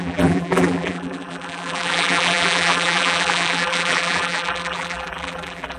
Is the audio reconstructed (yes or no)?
yes